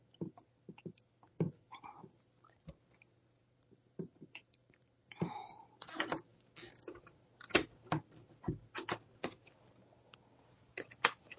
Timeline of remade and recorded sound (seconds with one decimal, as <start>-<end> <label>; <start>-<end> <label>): 0.0-3.4 recorded; 3.4-5.5 remade; 5.5-11.4 recorded